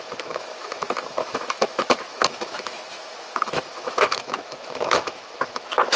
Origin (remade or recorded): remade